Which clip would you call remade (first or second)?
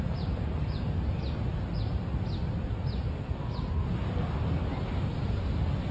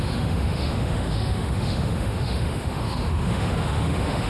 second